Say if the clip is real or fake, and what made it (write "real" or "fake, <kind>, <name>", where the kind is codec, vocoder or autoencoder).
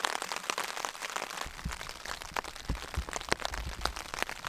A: real